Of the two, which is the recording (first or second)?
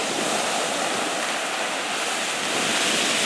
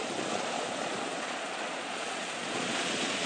first